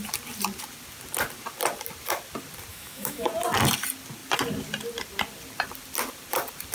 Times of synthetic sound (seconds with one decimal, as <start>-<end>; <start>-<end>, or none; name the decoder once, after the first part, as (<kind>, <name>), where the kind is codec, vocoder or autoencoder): 2.7-3.3 (autoencoder, DAC-VAE)